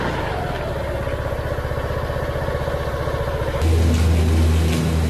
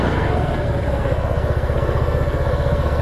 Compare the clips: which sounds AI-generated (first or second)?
second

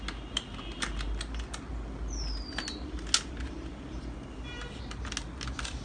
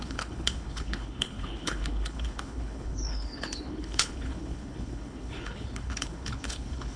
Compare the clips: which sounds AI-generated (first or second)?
second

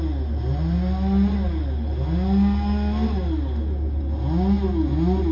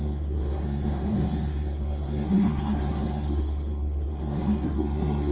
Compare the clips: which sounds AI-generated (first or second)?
second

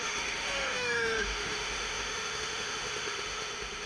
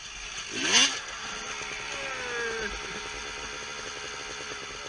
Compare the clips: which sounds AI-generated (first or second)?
first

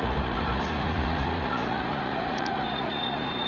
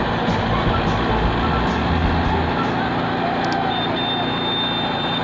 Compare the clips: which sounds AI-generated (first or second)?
first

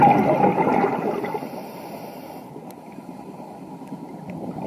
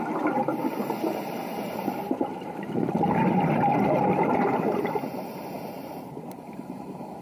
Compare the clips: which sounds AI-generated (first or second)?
second